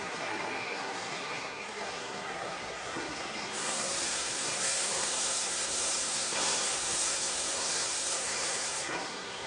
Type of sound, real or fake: fake